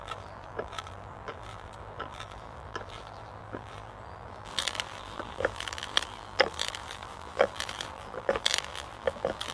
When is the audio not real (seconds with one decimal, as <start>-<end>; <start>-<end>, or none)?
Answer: 0.0-9.5